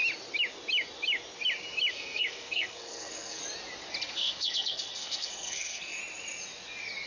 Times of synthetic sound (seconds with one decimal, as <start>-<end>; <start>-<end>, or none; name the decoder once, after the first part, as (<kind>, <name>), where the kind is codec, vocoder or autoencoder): 1.9-3.4 (codec, SNAC); 4.1-6.0